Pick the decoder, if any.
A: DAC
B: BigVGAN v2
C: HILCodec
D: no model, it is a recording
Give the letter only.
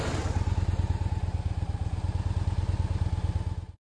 D